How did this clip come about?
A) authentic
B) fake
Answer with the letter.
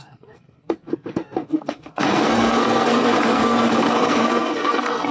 B